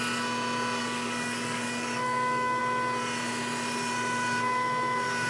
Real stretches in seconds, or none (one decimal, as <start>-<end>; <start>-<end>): 0.0-0.8; 2.6-5.3